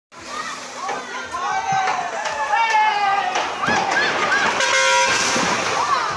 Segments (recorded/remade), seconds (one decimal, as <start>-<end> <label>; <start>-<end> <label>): 0.0-6.2 recorded